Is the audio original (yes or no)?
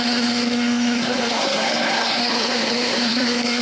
no